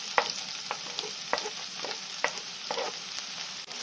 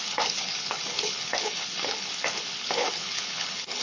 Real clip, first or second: first